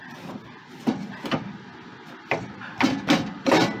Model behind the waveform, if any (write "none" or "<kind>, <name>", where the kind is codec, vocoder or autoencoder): none